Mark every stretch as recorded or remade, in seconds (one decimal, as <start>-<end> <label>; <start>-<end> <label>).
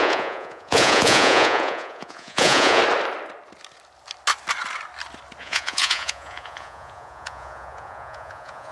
0.0-2.8 remade; 2.8-5.4 recorded; 5.4-8.7 remade